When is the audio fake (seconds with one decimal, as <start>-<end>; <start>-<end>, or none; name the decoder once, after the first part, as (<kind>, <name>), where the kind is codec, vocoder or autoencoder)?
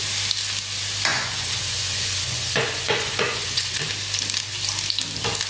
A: 1.1-3.8 (vocoder, Vocos)